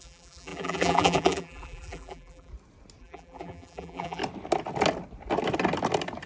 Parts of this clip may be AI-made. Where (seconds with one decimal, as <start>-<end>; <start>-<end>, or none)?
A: 0.0-2.5; 3.0-4.2